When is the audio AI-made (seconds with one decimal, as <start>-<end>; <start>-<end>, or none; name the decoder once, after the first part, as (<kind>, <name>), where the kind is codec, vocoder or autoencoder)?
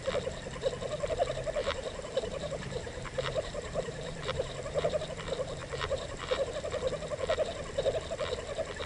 1.6-5.0 (vocoder, BigVGAN v2); 5.6-6.5